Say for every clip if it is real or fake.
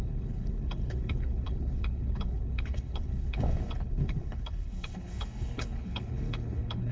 fake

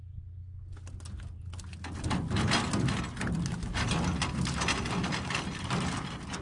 real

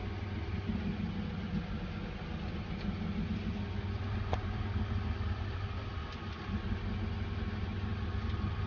real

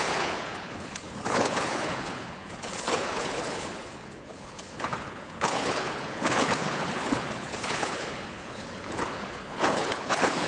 fake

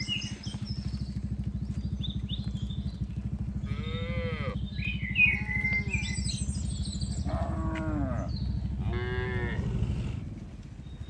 real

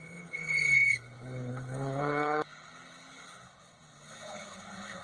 fake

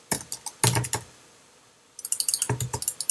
real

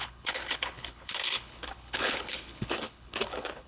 fake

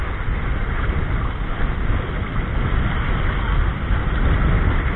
real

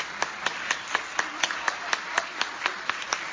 real